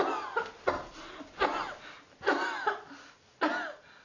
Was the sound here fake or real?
real